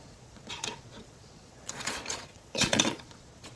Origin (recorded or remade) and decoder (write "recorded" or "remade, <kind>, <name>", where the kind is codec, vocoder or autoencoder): remade, vocoder, Vocos